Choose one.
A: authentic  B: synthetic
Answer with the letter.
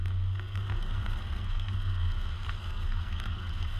B